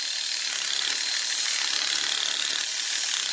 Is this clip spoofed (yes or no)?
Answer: no